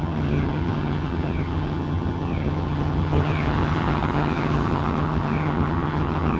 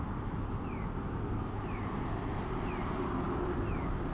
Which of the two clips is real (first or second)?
second